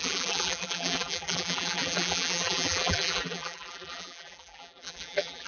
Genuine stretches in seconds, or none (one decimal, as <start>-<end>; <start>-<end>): none

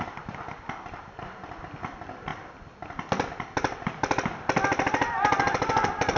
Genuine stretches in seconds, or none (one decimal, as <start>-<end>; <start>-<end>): 0.0-6.2